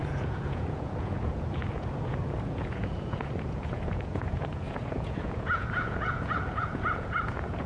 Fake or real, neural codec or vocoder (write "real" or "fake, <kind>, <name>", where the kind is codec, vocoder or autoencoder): fake, vocoder, Vocos